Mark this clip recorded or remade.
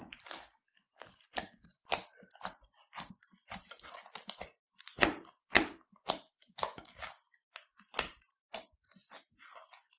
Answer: recorded